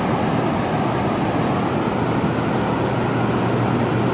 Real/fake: real